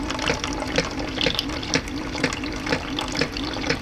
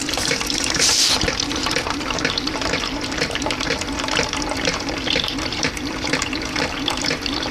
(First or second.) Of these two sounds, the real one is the first